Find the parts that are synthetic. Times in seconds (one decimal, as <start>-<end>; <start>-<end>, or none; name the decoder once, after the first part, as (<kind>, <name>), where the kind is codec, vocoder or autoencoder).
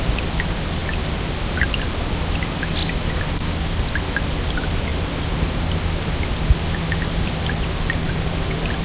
none